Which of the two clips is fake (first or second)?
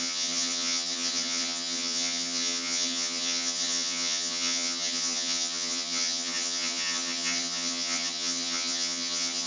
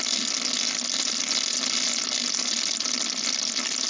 first